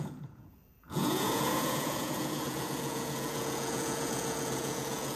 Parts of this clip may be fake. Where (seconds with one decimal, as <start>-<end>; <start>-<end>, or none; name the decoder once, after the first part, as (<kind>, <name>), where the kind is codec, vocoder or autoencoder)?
0.0-5.2 (vocoder, Vocos)